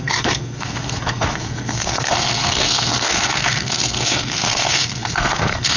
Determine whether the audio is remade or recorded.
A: remade